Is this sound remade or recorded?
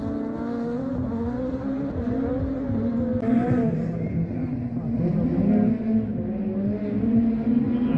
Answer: recorded